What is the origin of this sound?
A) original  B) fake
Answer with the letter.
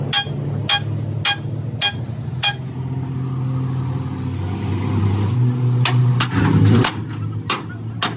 A